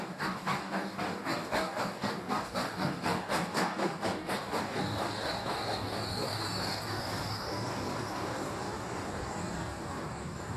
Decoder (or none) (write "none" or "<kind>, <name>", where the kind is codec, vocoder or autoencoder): codec, DAC